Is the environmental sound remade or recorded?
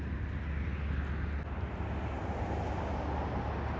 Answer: recorded